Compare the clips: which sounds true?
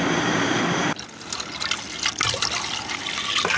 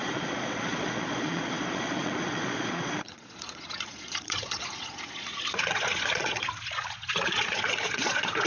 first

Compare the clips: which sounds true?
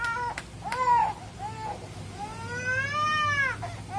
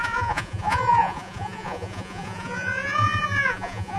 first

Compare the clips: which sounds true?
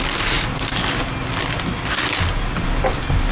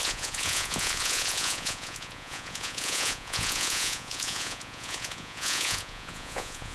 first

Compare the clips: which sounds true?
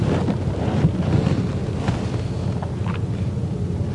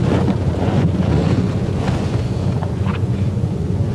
first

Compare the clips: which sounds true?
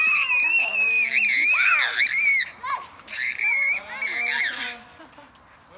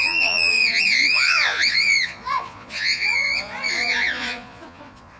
first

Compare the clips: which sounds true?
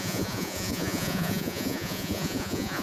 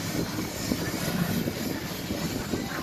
second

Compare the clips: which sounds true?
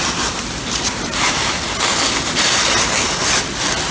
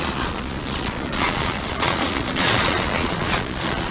first